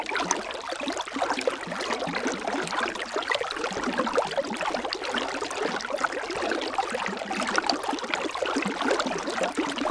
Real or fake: real